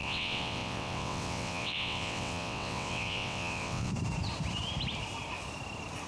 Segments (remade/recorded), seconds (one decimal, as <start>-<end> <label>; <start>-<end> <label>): 0.0-3.9 remade; 3.9-6.1 recorded